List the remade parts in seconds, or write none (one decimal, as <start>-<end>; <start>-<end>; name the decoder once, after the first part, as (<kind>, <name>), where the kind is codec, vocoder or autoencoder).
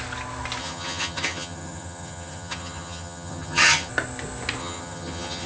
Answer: 0.6-3.9 (vocoder, HiFi-GAN); 4.6-5.5